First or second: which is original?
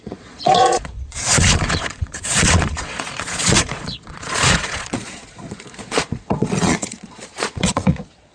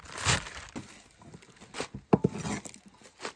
second